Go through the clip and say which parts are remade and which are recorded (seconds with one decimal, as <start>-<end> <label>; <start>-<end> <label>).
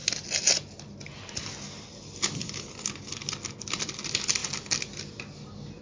0.0-5.8 recorded